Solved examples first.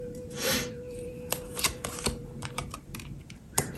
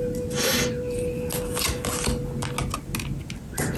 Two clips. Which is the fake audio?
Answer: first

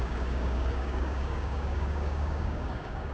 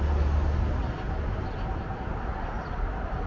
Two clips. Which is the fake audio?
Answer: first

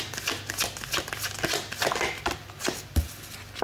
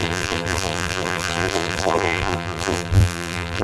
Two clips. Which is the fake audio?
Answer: second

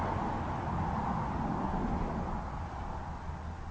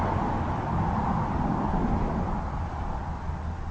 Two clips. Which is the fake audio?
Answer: second